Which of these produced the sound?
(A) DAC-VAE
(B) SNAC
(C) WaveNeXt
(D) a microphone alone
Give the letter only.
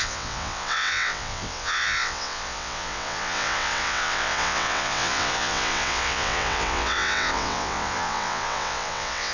C